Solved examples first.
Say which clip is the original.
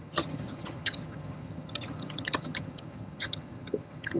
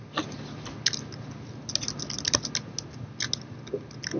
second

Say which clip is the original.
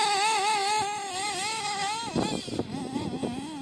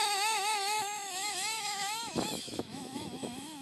first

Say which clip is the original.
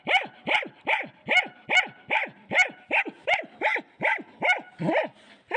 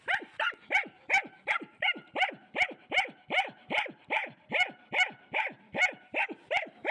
first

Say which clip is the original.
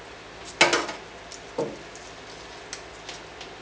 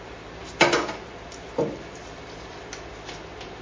first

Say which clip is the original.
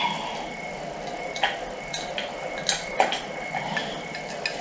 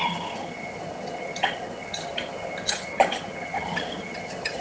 first